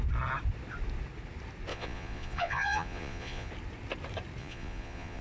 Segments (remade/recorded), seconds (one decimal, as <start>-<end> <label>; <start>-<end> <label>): 0.0-1.7 recorded; 1.7-3.5 remade; 3.5-4.4 recorded; 4.4-5.2 remade